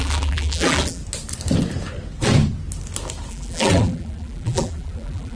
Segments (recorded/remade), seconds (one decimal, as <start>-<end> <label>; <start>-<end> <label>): 0.0-1.0 remade; 1.0-3.3 recorded; 3.3-5.4 remade